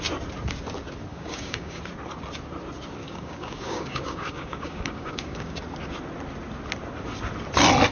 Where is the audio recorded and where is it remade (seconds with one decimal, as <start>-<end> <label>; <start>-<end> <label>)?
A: 0.0-1.1 recorded; 1.1-1.8 remade; 1.8-3.0 recorded; 3.0-5.6 remade; 5.6-7.9 recorded